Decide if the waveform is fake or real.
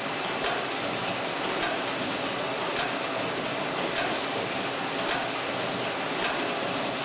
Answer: real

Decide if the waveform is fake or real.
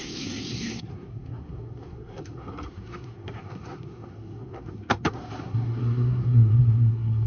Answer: fake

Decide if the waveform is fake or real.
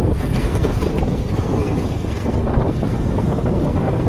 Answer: fake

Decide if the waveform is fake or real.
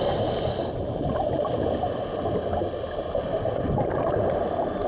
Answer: real